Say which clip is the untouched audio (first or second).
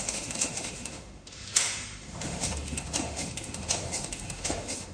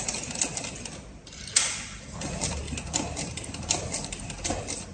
second